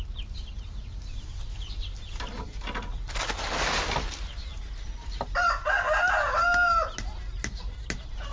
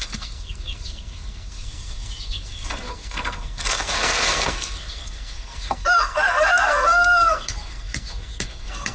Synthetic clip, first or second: second